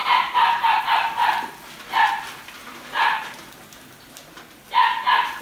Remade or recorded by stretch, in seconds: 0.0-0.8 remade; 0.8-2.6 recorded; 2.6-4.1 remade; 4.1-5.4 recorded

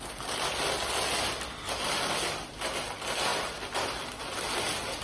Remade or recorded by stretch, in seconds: 0.0-3.3 recorded; 3.3-4.2 remade; 4.2-5.0 recorded

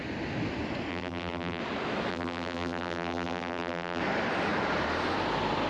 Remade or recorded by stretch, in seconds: 0.0-0.9 recorded; 0.9-1.6 remade; 1.6-2.1 recorded; 2.1-4.0 remade; 4.0-5.7 recorded

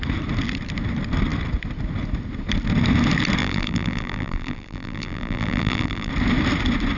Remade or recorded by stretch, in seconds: 0.0-3.4 recorded; 3.4-6.1 remade; 6.1-7.0 recorded

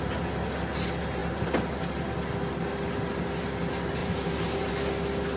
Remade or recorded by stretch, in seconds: 0.0-4.0 recorded; 4.0-4.7 remade; 4.7-5.4 recorded

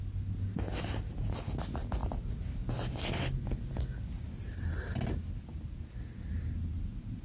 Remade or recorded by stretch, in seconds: 0.0-7.2 recorded

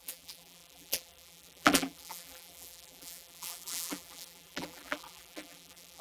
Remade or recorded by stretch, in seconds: 0.0-6.0 remade

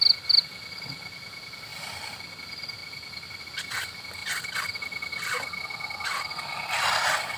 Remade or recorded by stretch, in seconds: 0.0-1.7 recorded; 1.7-2.3 remade; 2.3-2.8 recorded; 2.8-3.4 remade; 3.4-7.4 recorded